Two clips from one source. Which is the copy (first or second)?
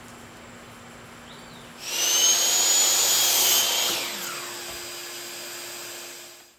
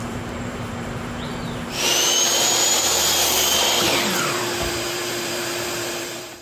second